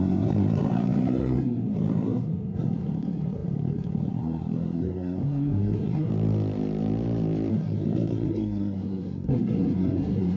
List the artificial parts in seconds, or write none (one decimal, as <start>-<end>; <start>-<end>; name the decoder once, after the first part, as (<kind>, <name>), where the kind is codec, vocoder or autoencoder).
0.0-6.1 (codec, SNAC); 7.5-10.4